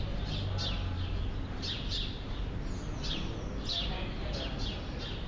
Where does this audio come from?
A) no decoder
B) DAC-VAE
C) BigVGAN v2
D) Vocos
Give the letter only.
A